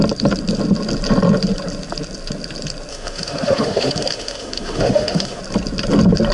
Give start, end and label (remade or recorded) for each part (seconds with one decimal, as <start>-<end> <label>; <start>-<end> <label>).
0.0-2.9 recorded; 2.9-5.4 remade; 5.4-6.3 recorded